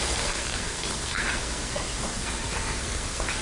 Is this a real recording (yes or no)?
no